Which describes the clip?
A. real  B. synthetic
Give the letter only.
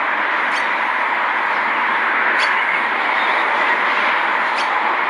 A